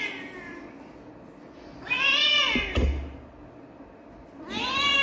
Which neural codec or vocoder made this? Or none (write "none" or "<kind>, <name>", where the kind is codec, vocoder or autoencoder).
none